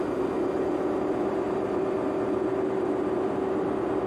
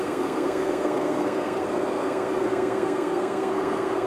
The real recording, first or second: first